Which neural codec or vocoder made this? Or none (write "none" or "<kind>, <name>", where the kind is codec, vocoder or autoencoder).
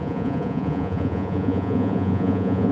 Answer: vocoder, Vocos